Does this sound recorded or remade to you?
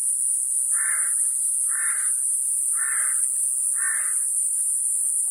recorded